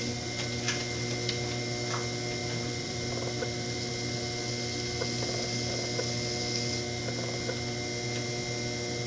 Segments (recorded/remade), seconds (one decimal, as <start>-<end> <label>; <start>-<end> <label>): 0.0-2.4 recorded; 2.4-3.9 remade; 3.9-9.1 recorded